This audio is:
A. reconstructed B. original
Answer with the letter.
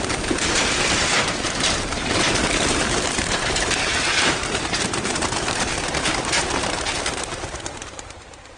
A